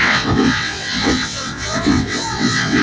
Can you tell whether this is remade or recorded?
remade